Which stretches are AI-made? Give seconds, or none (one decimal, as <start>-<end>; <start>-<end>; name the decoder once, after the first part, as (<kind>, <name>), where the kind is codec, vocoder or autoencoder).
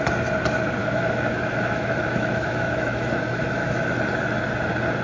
0.8-3.8 (autoencoder, DAC-VAE)